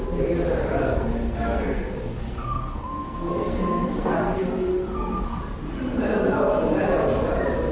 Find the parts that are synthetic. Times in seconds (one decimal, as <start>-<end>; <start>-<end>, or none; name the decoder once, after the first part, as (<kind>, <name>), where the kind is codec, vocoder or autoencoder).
0.8-5.4 (codec, SNAC)